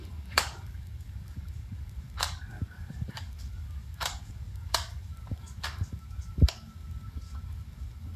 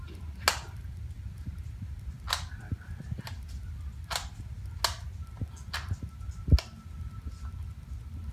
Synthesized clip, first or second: first